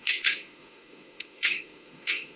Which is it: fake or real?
fake